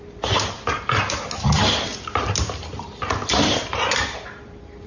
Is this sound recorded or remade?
recorded